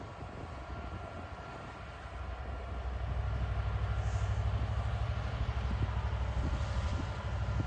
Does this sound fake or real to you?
real